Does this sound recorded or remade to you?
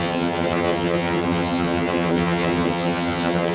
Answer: remade